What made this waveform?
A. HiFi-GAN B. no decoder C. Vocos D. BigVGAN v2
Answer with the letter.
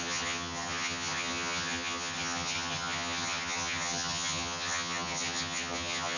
A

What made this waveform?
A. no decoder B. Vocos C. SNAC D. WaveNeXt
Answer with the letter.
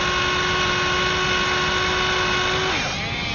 A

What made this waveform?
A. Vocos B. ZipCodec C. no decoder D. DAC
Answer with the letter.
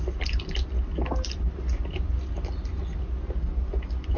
C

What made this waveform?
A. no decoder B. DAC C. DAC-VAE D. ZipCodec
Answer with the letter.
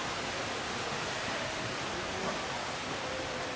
A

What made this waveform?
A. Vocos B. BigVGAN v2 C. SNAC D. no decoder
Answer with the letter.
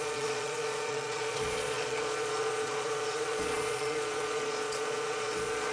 A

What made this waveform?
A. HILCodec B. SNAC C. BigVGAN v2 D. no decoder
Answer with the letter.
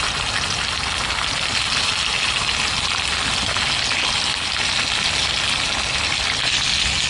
D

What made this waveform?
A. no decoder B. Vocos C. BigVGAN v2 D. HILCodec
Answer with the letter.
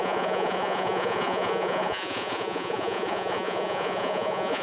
B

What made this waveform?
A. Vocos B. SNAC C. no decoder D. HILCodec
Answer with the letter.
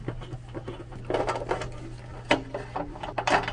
C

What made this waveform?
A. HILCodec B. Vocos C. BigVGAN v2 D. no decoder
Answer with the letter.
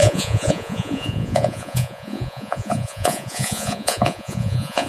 B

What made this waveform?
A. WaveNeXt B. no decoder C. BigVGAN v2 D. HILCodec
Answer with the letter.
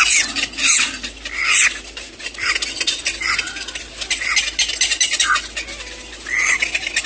B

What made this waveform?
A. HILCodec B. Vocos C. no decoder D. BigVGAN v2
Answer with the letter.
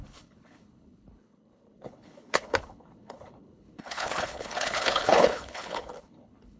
A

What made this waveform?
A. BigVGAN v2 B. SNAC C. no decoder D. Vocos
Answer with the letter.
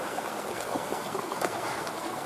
B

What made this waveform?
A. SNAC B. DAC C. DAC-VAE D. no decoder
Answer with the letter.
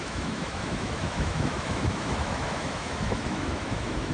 C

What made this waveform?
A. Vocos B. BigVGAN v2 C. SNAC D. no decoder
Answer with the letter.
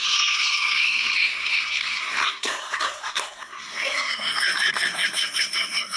C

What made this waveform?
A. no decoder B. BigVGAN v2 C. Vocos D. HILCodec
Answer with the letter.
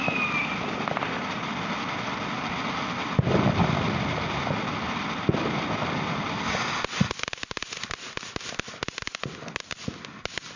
A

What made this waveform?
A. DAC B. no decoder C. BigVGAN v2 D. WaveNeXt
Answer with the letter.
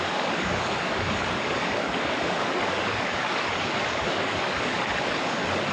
A